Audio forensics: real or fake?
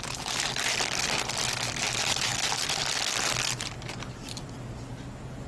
real